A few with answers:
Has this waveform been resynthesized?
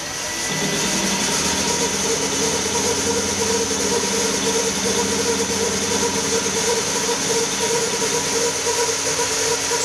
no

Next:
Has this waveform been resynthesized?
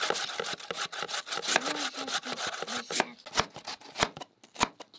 no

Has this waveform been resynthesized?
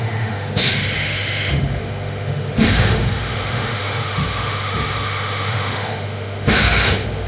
yes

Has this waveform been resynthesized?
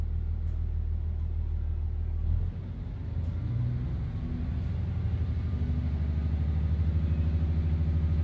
no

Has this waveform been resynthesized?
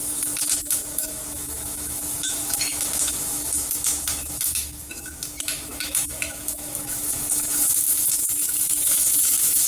yes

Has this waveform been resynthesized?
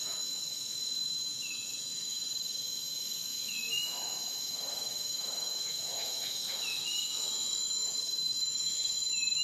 yes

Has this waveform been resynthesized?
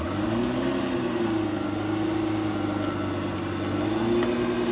no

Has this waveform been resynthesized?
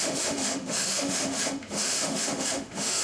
yes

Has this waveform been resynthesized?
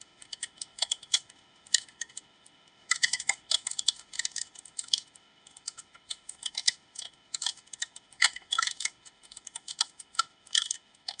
yes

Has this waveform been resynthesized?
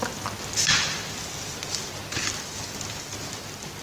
no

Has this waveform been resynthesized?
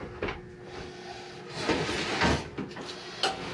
no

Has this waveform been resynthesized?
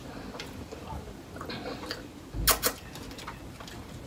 no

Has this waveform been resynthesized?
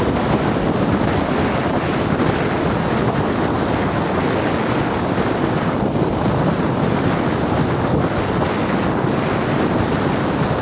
no